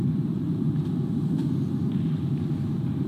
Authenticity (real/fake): fake